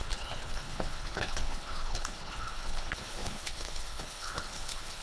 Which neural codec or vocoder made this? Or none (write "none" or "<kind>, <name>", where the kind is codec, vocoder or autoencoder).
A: codec, HILCodec